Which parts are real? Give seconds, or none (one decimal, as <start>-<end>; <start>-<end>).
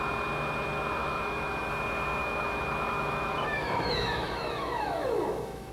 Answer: 0.0-1.0; 1.7-2.2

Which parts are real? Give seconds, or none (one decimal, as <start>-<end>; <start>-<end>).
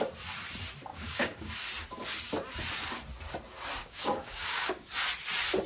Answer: 0.0-0.9; 1.5-3.8; 4.9-5.7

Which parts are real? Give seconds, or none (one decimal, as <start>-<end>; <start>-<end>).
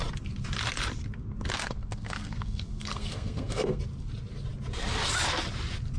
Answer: 0.0-1.6; 3.8-6.0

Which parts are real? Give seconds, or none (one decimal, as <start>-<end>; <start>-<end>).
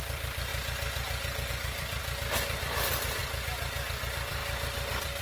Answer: 0.5-1.5; 2.0-2.6